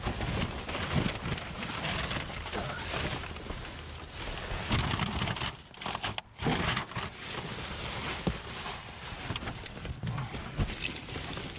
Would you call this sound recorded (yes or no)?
yes